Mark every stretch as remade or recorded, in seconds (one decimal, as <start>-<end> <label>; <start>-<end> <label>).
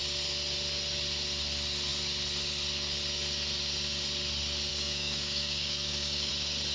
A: 0.0-4.7 recorded; 4.7-6.3 remade; 6.3-6.7 recorded